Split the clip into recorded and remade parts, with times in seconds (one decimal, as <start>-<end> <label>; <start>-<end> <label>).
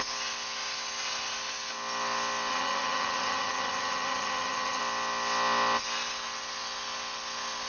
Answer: 0.0-2.5 recorded; 2.5-4.8 remade; 4.8-7.7 recorded